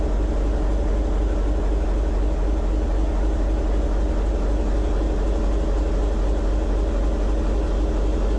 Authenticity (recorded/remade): recorded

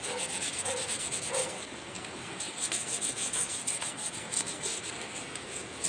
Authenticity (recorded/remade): remade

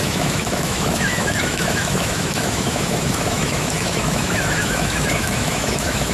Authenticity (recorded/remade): remade